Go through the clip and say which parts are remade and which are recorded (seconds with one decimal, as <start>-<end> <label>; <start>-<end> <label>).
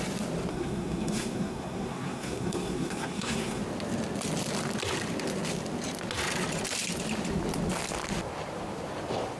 0.0-0.5 recorded; 0.5-3.6 remade; 3.6-9.4 recorded